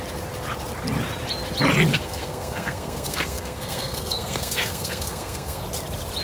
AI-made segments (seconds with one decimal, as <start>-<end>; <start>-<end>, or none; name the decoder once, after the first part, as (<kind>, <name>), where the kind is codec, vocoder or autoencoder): 1.9-5.6 (codec, SNAC)